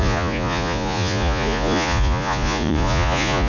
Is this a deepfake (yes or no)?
yes